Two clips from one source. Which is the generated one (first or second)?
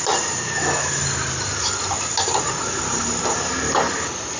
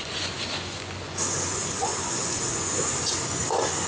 second